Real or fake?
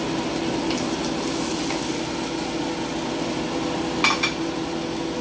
real